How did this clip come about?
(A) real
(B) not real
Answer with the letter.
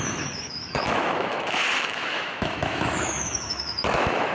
B